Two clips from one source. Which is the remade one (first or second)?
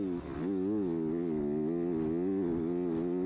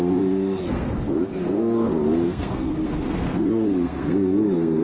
second